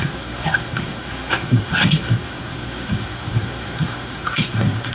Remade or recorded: remade